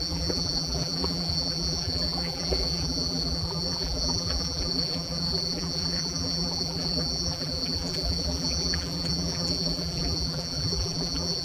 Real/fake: fake